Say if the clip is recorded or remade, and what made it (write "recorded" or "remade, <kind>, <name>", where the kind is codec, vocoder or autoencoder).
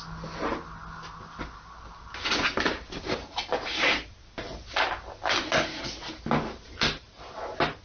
recorded